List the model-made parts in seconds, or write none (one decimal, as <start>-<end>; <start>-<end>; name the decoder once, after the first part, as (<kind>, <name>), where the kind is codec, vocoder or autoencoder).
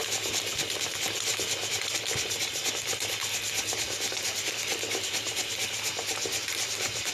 5.6-7.1 (vocoder, BigVGAN v2)